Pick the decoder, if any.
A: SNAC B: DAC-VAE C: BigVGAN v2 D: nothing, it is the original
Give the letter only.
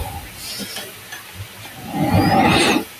D